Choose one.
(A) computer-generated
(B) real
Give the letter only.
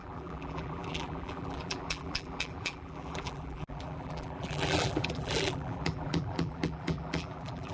A